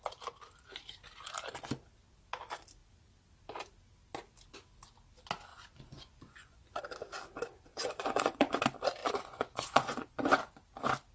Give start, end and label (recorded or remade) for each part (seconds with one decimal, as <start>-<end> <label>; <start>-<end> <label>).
0.0-5.5 recorded; 5.5-6.8 remade; 6.8-7.7 recorded; 7.7-8.6 remade; 8.6-9.0 recorded; 9.0-10.4 remade; 10.4-11.1 recorded